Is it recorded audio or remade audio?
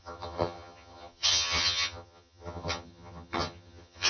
remade